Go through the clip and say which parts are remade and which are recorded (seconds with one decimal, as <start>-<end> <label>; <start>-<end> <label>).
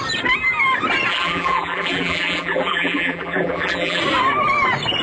0.0-1.1 recorded; 1.1-4.0 remade; 4.0-5.0 recorded